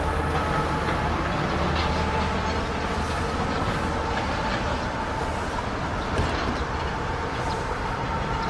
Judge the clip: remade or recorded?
recorded